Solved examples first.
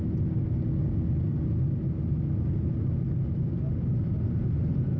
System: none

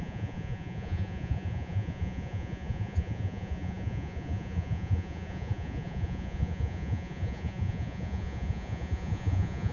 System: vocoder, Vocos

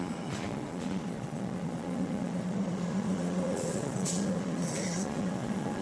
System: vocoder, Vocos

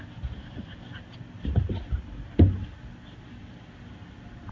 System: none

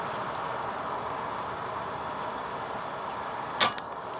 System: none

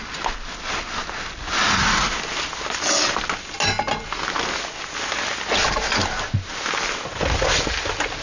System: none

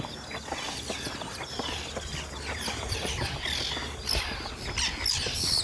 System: none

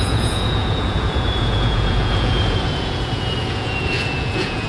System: vocoder, Vocos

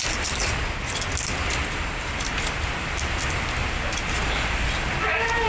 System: none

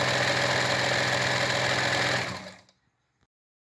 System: none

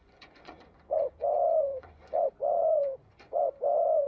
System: vocoder, Vocos